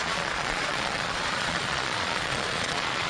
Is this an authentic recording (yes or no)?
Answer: no